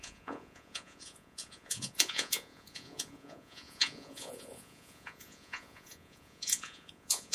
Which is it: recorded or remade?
remade